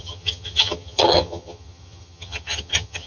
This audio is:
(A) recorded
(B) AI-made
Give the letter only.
B